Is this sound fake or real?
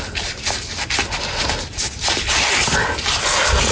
real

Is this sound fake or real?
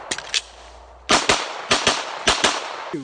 real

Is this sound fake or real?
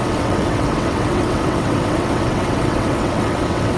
fake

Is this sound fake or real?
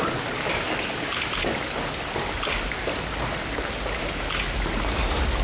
real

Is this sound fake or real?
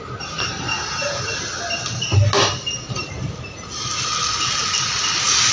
real